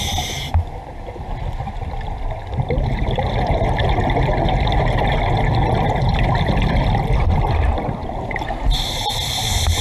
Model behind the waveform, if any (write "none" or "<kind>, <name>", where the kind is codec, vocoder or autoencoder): none